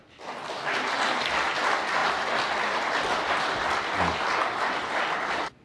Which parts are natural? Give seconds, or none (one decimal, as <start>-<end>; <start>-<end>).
0.0-2.0